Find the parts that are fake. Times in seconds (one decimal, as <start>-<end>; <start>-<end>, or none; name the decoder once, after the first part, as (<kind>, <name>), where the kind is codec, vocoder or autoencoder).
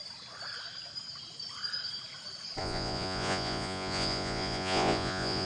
2.6-5.5 (vocoder, Vocos)